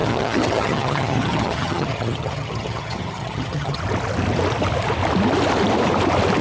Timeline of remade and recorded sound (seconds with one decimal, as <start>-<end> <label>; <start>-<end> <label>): 0.0-3.8 remade; 3.8-6.4 recorded